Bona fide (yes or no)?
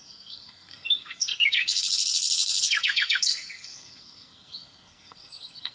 no